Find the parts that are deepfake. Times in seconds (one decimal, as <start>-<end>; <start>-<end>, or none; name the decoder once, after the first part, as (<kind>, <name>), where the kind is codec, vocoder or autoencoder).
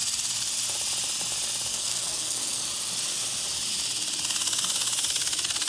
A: 1.7-2.7 (codec, SNAC)